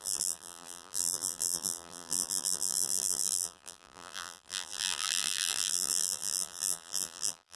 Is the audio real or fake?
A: fake